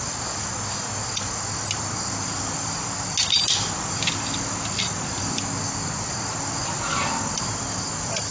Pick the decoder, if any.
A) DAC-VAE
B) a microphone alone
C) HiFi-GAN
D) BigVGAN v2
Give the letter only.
B